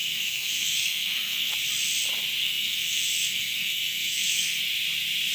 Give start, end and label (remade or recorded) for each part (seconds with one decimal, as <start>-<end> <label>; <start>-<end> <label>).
0.0-1.5 remade; 1.5-2.4 recorded; 2.4-4.6 remade; 4.6-5.3 recorded